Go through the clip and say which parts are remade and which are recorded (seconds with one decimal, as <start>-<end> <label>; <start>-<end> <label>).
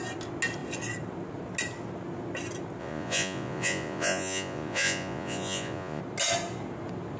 0.0-2.8 recorded; 2.8-6.0 remade; 6.0-7.2 recorded